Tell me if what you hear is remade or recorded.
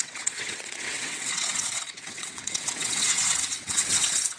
remade